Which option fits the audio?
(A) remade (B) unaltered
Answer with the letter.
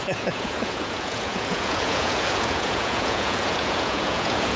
A